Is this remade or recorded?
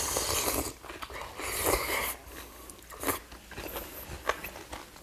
recorded